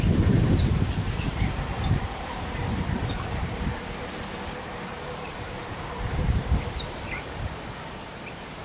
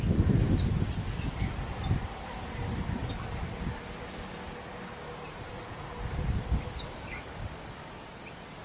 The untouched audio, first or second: second